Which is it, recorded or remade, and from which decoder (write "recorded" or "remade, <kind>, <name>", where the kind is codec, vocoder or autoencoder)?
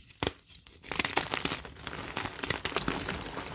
recorded